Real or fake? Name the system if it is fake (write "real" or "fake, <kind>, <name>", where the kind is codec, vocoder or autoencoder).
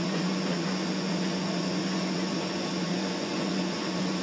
fake, vocoder, Vocos